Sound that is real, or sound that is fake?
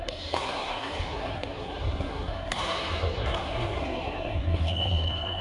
fake